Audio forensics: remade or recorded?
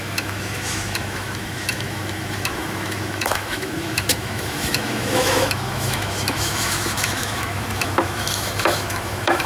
remade